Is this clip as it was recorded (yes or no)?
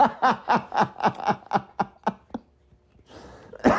yes